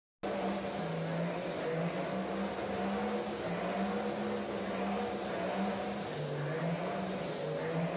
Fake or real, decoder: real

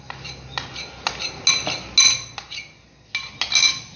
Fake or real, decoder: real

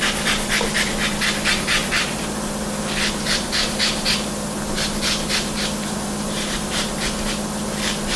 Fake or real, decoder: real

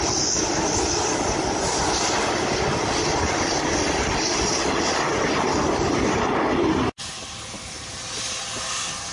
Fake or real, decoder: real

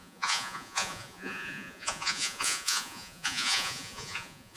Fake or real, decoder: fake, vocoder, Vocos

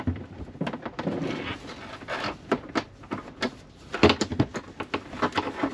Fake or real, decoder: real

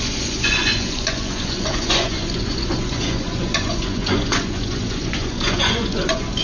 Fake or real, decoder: fake, vocoder, Vocos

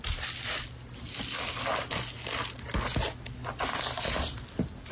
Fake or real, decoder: real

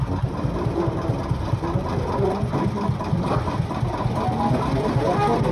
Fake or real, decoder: real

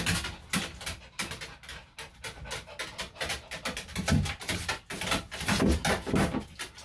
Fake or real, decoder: real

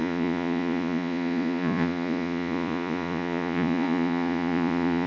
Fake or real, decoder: fake, vocoder, Vocos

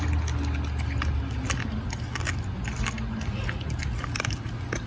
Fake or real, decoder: real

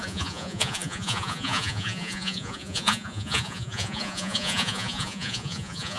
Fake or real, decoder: fake, vocoder, Vocos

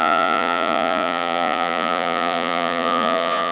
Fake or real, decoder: fake, vocoder, Vocos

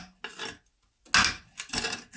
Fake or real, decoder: real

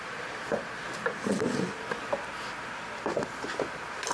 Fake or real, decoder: real